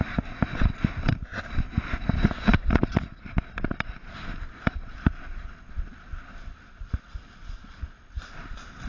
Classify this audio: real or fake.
real